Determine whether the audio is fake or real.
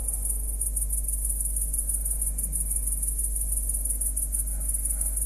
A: real